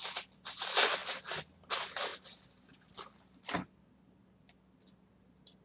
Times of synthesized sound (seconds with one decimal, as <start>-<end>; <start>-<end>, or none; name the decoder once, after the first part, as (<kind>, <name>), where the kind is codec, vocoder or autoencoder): none